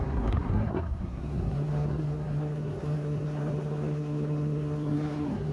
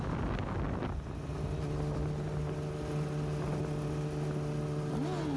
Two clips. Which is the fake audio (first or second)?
first